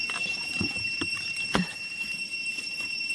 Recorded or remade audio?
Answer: remade